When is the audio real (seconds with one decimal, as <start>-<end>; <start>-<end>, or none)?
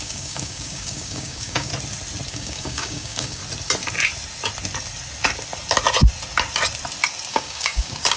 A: 1.7-2.3; 3.4-7.3